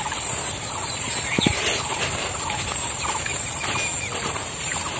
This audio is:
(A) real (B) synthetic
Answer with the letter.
A